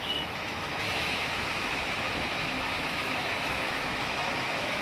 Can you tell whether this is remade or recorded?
remade